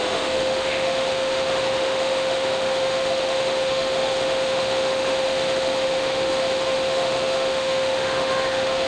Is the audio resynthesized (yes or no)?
yes